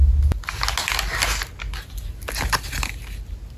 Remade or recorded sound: recorded